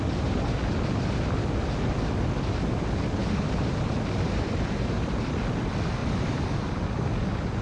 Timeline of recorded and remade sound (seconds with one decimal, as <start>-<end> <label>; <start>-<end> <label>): 0.0-6.0 recorded; 6.0-6.6 remade; 6.6-7.6 recorded